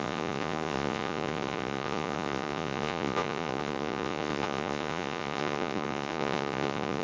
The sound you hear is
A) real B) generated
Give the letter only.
B